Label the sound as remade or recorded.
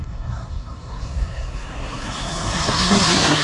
remade